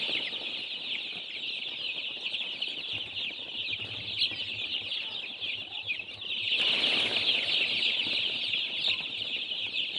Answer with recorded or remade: recorded